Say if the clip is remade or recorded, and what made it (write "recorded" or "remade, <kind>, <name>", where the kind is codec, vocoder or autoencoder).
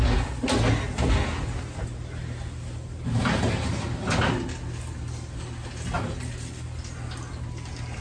recorded